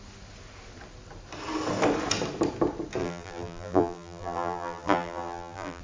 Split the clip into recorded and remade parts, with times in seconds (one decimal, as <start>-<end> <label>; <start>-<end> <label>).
0.0-3.0 recorded; 3.0-5.8 remade